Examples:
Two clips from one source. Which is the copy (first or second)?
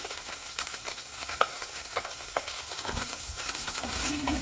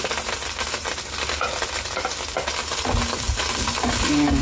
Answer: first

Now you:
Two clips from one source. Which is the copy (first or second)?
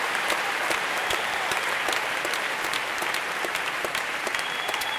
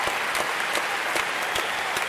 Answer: first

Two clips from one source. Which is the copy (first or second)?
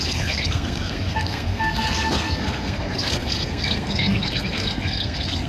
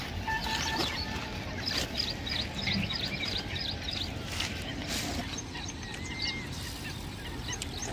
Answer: first